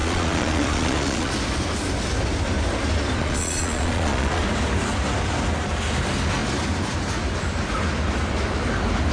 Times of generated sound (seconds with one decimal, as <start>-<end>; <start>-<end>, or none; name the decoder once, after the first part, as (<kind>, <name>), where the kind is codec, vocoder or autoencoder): 0.0-1.3 (vocoder, Vocos); 3.2-4.4